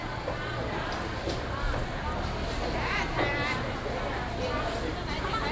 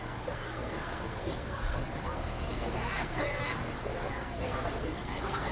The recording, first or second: first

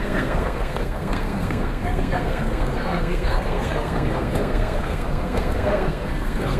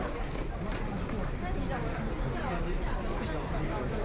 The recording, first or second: second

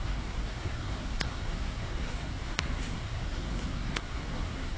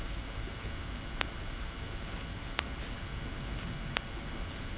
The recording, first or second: second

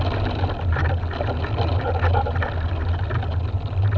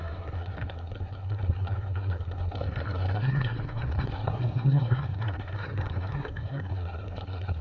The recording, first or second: first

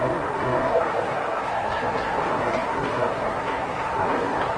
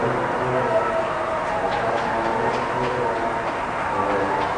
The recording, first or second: second